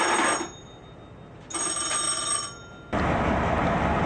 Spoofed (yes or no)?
no